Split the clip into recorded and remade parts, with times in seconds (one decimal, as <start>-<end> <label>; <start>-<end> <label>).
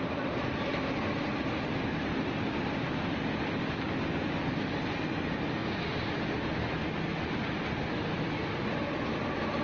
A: 0.0-9.6 recorded